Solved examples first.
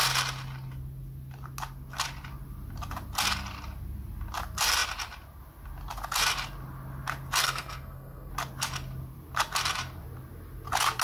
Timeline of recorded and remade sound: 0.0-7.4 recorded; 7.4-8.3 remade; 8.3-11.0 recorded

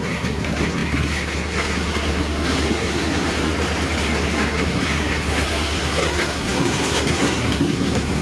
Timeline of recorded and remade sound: 0.0-3.5 remade; 3.5-4.0 recorded; 4.0-8.2 remade